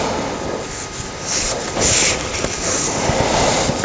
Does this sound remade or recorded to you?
recorded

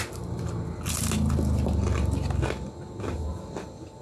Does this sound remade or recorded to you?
recorded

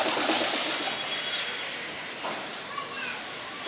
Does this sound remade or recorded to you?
recorded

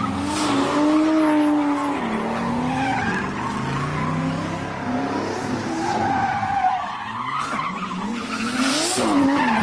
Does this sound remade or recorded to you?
recorded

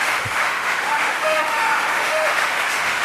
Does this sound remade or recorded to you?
remade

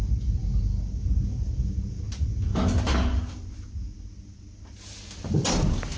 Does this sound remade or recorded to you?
recorded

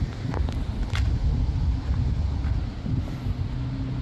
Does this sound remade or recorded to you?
recorded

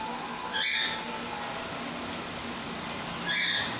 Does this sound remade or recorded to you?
recorded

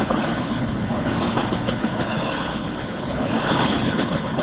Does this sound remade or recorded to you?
remade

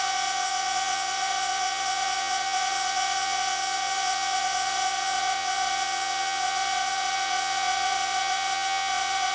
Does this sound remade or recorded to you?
remade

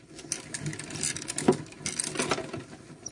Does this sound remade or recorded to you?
recorded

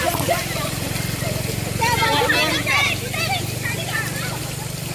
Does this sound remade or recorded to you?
recorded